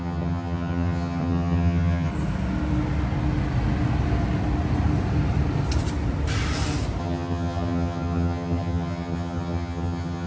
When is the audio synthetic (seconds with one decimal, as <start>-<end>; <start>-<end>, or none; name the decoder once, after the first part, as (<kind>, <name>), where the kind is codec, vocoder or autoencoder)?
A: 0.0-2.1 (vocoder, HiFi-GAN); 7.0-10.3